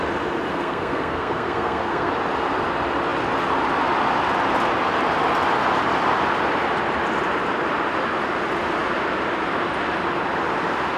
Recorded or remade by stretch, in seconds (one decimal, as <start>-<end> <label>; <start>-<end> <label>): 0.0-0.5 recorded; 0.5-2.1 remade; 2.1-11.0 recorded